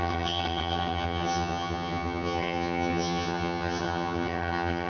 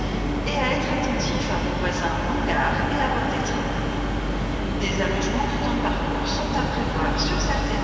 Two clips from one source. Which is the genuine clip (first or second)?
second